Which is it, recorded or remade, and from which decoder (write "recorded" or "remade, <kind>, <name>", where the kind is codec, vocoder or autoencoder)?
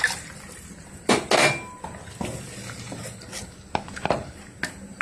recorded